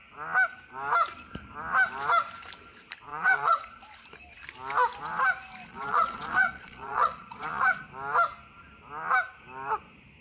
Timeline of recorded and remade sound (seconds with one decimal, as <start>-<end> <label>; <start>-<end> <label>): 0.0-3.1 recorded; 3.1-3.8 remade; 3.8-5.7 recorded; 5.7-7.8 remade; 7.8-10.2 recorded